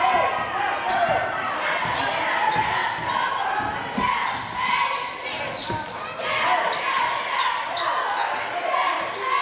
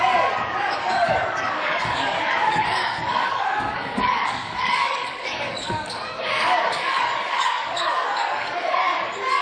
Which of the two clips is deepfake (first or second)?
second